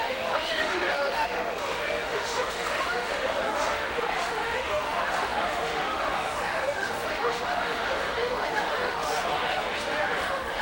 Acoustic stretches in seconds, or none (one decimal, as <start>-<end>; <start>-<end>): none